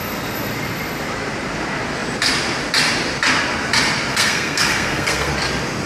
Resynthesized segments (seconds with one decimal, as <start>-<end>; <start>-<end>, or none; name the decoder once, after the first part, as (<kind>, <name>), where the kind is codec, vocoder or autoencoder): 4.1-5.3 (codec, SNAC)